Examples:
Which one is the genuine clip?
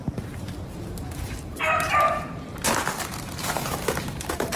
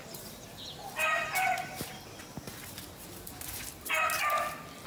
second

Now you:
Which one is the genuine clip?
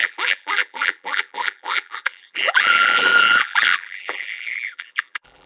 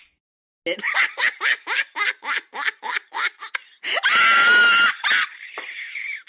second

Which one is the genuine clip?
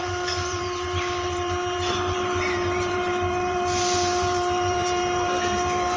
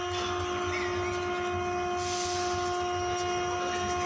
second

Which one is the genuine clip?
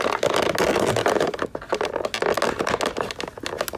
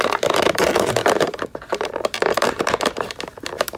first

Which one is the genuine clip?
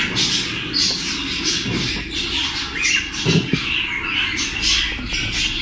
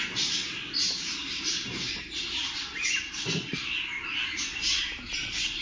first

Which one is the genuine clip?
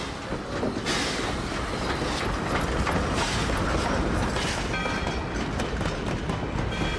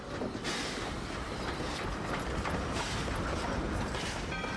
first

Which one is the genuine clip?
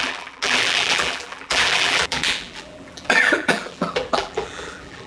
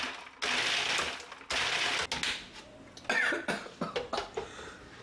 second